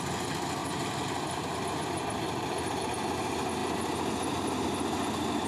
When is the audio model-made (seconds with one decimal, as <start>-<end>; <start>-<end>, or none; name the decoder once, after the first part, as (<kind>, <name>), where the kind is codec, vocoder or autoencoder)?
none